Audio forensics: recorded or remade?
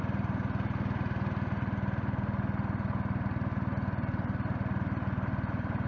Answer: recorded